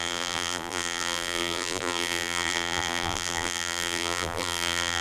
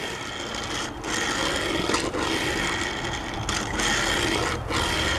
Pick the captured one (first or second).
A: second